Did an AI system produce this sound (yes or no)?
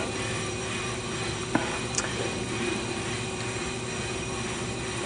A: no